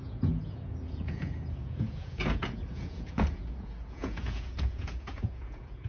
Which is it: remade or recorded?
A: remade